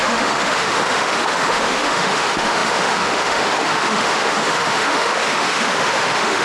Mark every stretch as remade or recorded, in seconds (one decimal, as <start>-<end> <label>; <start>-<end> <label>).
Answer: 0.0-6.4 remade